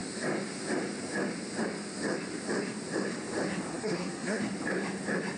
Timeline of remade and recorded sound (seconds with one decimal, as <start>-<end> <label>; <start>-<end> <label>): 0.0-3.7 recorded; 3.7-4.4 remade; 4.4-5.4 recorded